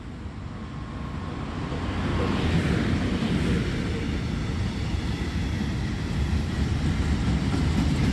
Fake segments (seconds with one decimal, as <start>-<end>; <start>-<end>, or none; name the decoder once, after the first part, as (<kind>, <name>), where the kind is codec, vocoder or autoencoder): 2.1-3.3 (vocoder, BigVGAN v2)